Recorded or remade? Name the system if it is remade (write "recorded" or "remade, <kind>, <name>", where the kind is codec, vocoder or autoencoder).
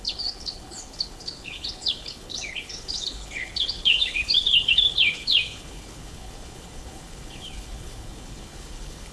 remade, codec, HILCodec